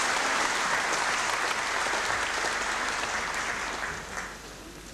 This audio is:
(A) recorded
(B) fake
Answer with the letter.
A